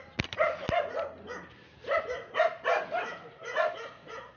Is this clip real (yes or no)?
yes